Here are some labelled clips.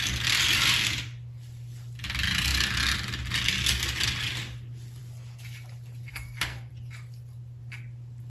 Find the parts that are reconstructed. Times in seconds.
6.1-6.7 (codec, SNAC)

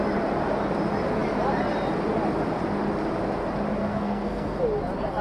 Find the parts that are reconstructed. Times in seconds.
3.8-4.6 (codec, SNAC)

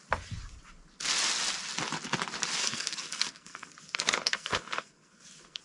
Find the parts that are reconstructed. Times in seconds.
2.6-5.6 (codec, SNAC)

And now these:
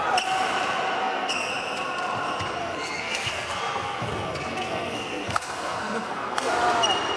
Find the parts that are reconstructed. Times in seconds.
1.0-1.5 (codec, SNAC); 2.6-6.5

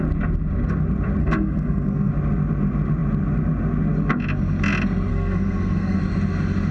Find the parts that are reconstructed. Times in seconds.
1.2-2.1 (codec, SNAC); 5.1-6.0

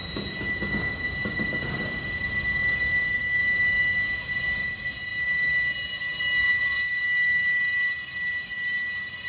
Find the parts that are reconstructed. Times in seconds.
none